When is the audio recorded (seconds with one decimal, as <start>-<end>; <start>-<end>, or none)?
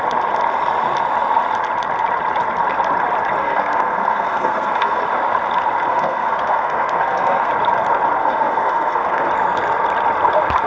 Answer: 0.0-3.4; 5.0-5.9; 7.5-8.2; 9.3-10.7